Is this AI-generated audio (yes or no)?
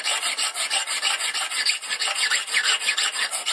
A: no